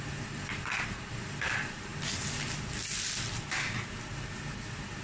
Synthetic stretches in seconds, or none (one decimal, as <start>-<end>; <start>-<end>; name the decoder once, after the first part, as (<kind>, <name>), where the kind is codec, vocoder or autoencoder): none